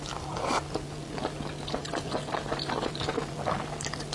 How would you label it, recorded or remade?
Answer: recorded